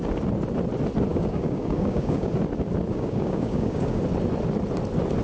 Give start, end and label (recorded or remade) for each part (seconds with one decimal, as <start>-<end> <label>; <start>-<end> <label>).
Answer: 0.0-1.1 recorded; 1.1-2.3 remade; 2.3-2.9 recorded; 2.9-4.0 remade; 4.0-5.2 recorded